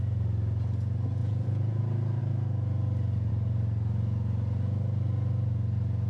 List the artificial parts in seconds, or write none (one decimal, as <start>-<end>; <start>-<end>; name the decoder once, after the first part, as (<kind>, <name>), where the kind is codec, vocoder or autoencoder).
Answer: 1.2-1.8 (vocoder, Vocos)